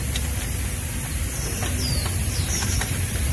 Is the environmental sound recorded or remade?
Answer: recorded